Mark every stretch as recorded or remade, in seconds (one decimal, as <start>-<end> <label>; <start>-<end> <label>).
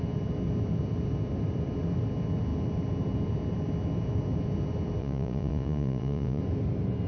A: 0.0-5.0 recorded; 5.0-6.4 remade; 6.4-7.1 recorded